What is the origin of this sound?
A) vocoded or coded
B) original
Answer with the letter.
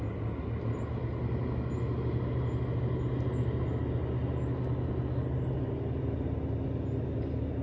B